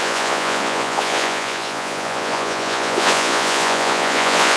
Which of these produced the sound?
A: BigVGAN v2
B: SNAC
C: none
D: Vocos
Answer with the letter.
D